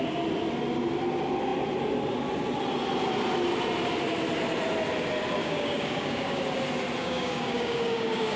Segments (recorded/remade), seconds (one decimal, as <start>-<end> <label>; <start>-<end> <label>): 0.0-5.4 recorded; 5.4-6.4 remade; 6.4-7.0 recorded; 7.0-8.4 remade